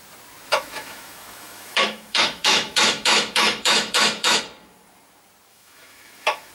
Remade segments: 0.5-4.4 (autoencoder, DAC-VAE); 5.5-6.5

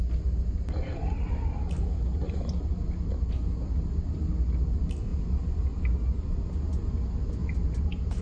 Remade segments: none